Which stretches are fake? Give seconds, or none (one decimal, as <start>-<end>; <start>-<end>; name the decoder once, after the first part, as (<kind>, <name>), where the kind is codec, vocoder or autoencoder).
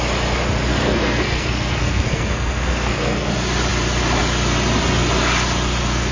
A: 0.7-3.3 (codec, SNAC)